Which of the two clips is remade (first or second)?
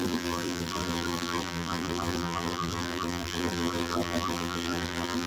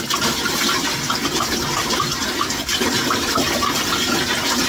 first